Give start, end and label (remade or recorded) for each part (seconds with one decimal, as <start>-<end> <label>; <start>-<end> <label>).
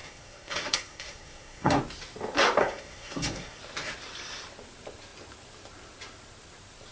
0.0-1.8 remade; 1.8-2.6 recorded; 2.6-3.6 remade; 3.6-6.9 recorded